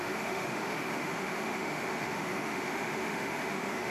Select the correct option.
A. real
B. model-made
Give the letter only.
B